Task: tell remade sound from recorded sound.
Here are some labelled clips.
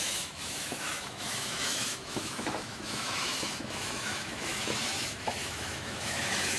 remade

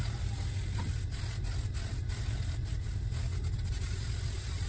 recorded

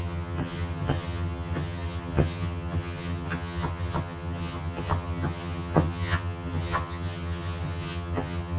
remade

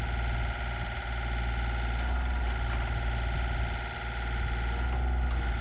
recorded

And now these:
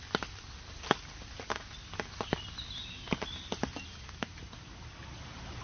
recorded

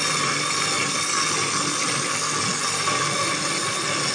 recorded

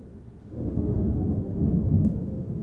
remade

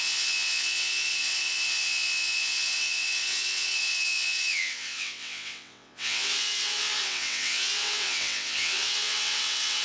remade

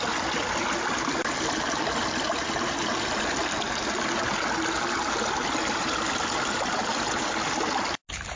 recorded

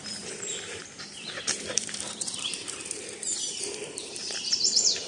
remade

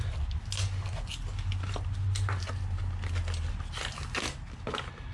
recorded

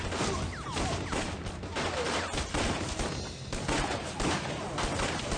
recorded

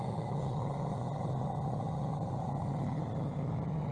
recorded